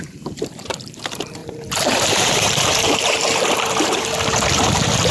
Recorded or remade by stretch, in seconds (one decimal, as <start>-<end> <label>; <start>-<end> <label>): 0.0-5.1 remade